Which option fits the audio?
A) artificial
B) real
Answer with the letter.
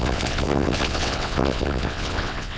A